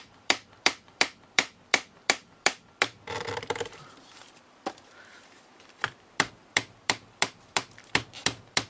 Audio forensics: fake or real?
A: fake